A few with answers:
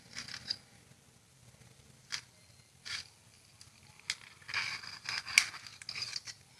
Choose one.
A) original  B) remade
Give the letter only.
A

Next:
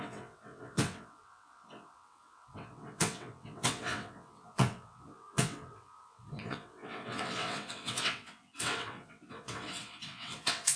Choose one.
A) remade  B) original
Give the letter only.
A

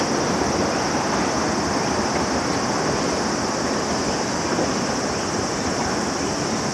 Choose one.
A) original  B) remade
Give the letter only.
A